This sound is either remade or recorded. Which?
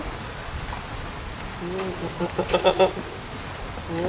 recorded